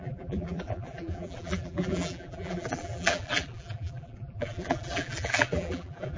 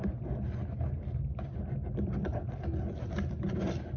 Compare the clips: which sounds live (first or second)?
second